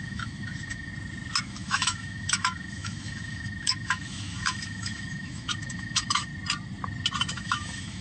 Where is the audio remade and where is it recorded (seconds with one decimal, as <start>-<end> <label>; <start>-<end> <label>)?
0.0-0.9 remade; 0.9-1.4 recorded; 1.4-6.3 remade; 6.3-7.3 recorded; 7.3-8.0 remade